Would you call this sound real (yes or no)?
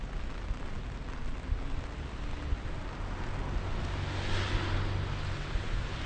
yes